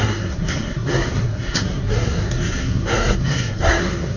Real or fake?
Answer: fake